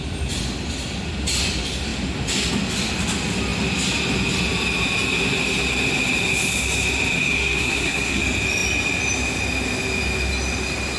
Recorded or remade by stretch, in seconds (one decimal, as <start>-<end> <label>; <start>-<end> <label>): 0.0-7.2 recorded; 7.2-8.2 remade; 8.2-11.0 recorded